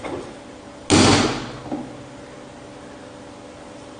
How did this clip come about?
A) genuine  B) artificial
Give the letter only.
A